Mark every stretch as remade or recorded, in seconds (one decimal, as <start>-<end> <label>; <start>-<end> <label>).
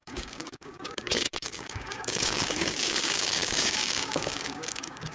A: 0.0-5.1 remade